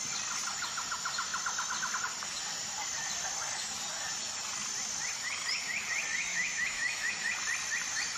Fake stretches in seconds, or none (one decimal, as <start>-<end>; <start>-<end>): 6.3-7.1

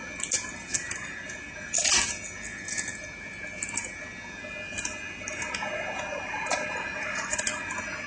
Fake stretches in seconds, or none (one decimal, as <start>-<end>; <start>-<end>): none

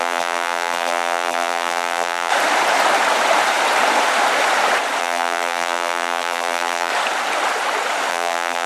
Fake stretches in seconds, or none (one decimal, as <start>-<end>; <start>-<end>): 0.0-2.3; 5.0-6.9; 8.1-8.7

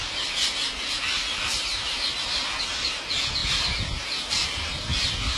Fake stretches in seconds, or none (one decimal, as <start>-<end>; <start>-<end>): none

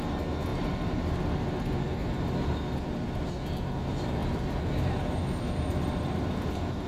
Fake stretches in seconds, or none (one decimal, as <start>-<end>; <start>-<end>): none

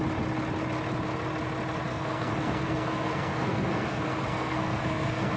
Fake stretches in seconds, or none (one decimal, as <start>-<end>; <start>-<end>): 1.9-5.4

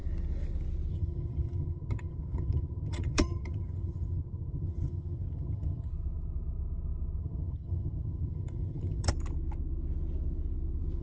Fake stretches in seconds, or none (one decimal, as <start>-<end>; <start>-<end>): 0.9-5.9; 7.2-9.1

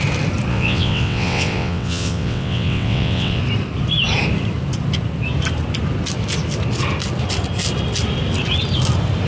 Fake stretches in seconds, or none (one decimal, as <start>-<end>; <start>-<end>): 0.5-3.4